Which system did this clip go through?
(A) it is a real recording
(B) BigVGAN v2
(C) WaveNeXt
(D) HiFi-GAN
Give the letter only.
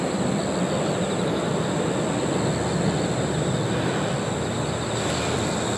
A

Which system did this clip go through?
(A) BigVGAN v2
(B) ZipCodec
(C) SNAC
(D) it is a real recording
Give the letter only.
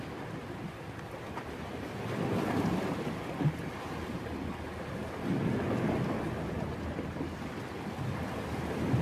D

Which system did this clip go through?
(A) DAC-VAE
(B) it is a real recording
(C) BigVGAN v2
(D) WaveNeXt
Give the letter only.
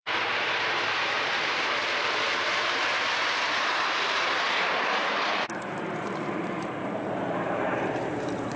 C